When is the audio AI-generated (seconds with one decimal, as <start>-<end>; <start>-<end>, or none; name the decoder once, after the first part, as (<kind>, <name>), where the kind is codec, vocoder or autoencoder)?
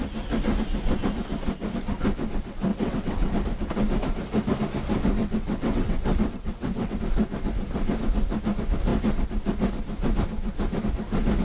2.7-3.3 (vocoder, WaveNeXt); 5.2-7.0